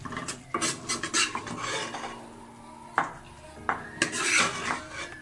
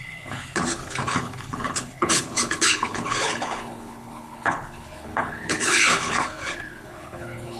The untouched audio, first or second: first